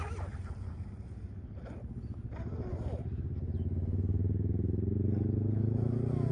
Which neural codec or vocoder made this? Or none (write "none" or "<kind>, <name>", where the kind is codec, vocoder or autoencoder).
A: none